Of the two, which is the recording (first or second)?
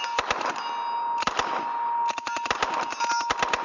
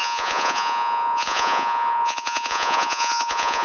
first